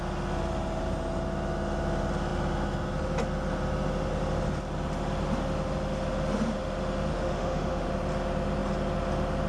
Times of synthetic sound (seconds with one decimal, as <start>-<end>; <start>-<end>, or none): 7.1-7.9